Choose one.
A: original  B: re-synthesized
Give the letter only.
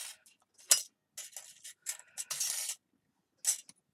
A